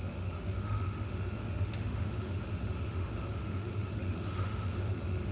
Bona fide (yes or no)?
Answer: no